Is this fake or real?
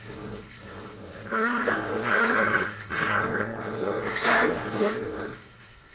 fake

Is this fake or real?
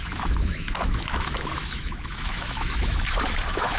fake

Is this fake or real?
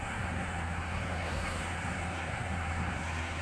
fake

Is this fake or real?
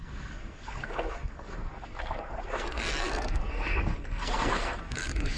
fake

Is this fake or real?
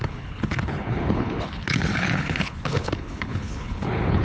fake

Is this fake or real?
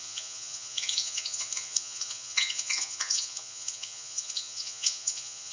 fake